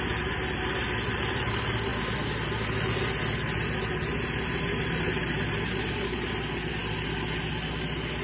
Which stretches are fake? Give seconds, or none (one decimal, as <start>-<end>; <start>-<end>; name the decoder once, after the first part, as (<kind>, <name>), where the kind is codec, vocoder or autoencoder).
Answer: none